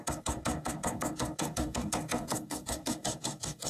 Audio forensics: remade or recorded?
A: remade